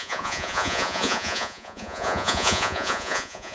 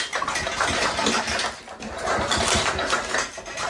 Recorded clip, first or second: second